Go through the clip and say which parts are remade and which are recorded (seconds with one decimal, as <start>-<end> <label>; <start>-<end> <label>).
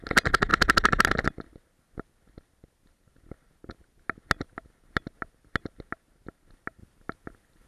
0.0-7.7 recorded